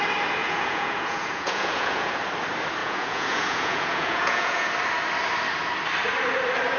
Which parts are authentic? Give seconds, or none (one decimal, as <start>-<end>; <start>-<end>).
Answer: 0.0-0.4; 2.2-2.8; 4.7-6.8